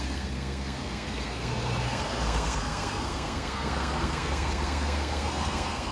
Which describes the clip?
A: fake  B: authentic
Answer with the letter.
A